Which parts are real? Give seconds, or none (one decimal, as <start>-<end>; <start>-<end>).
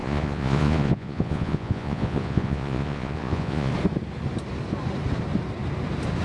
3.7-6.2